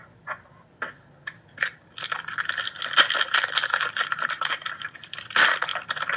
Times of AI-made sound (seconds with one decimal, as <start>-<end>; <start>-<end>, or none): 3.7-5.7